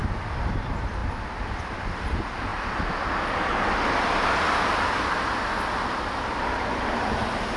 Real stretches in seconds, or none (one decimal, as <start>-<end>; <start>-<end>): 0.5-7.6